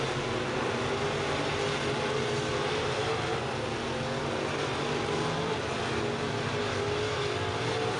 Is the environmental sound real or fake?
real